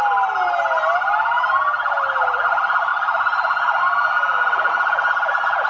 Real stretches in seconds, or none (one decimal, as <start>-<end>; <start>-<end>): 0.0-5.7